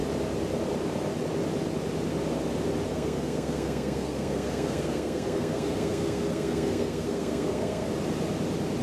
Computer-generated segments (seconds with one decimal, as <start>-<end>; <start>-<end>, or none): 2.9-7.9